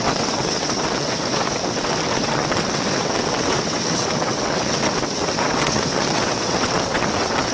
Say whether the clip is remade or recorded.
remade